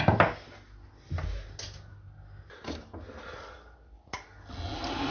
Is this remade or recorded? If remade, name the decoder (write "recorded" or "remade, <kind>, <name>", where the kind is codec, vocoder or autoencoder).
recorded